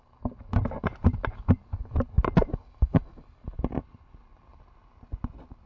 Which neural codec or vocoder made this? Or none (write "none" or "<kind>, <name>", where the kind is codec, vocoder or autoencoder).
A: none